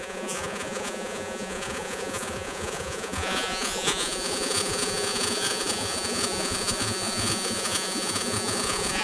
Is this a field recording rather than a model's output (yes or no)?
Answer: no